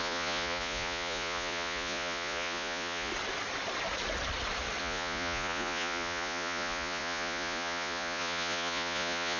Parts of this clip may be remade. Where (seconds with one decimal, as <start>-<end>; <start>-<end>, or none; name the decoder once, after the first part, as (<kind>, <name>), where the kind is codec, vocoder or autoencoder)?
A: 0.0-3.1 (vocoder, Vocos); 4.8-9.4